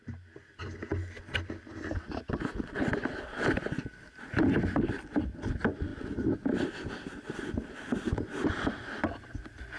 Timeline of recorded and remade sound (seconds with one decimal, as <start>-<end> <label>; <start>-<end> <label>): 0.0-9.8 recorded